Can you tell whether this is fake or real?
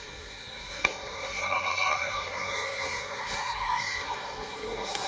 fake